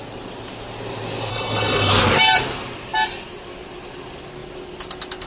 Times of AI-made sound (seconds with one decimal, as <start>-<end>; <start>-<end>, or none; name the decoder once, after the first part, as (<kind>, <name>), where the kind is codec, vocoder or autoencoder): 1.3-1.9 (codec, HILCodec)